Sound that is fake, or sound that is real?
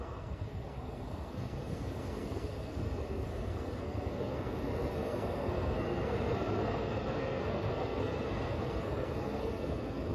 fake